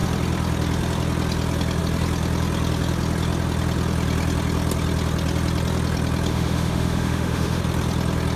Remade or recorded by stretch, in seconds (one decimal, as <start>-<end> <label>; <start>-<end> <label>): 0.0-6.3 recorded; 6.3-7.6 remade; 7.6-8.4 recorded

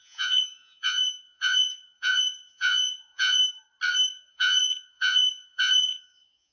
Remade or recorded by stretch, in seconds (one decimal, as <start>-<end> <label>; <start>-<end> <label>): 0.0-3.4 remade; 3.4-4.1 recorded; 4.1-6.5 remade

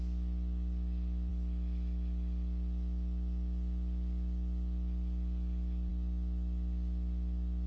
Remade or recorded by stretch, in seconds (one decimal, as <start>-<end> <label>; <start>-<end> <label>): 0.0-7.7 recorded

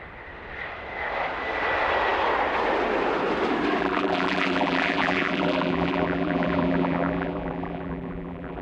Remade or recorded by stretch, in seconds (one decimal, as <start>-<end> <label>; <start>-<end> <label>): 0.0-3.8 recorded; 3.8-8.6 remade

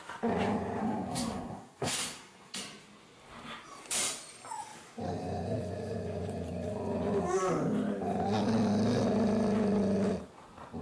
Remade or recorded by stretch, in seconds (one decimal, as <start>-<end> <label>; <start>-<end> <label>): 0.0-0.8 recorded; 0.8-2.6 remade; 2.6-10.8 recorded

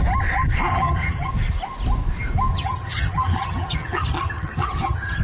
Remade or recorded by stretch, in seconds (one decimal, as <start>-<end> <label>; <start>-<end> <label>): 0.0-0.7 recorded; 0.7-1.3 remade; 1.3-2.5 recorded; 2.5-5.2 remade

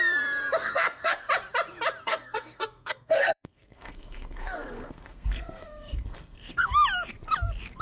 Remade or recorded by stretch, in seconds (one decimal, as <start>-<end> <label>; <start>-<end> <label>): 0.0-0.6 recorded; 0.6-1.3 remade; 1.3-2.0 recorded; 2.0-6.7 remade; 6.7-7.8 recorded